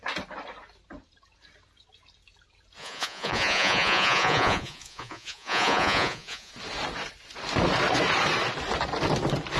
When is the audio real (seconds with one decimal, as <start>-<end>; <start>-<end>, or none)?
0.0-2.8; 6.5-9.6